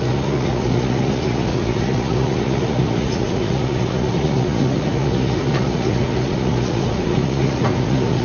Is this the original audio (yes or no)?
no